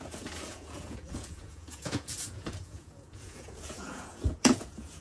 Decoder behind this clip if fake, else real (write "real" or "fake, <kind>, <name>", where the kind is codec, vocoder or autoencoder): fake, vocoder, Vocos